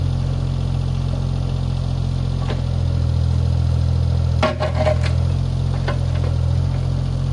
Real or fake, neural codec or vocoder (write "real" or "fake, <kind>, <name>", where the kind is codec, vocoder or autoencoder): real